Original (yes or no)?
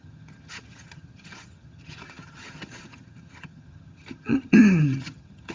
no